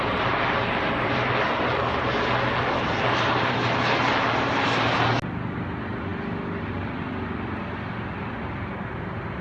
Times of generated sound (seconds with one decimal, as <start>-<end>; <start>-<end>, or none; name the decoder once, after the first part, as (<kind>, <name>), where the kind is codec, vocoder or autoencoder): none